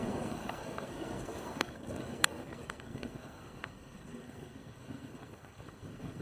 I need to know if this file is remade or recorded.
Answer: remade